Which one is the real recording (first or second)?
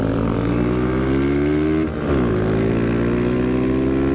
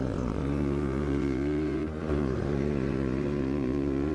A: first